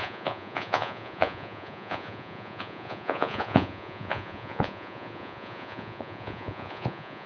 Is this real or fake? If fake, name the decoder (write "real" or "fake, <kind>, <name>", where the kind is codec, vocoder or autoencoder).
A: fake, vocoder, Vocos